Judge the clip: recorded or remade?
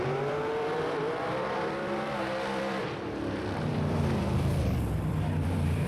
remade